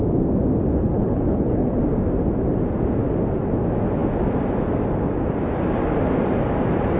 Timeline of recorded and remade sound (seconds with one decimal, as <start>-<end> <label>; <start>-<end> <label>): 0.0-0.8 recorded; 0.8-1.8 remade; 1.8-7.0 recorded